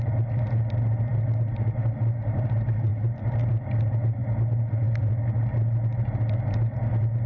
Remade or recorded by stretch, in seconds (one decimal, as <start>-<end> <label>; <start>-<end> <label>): 0.0-7.3 recorded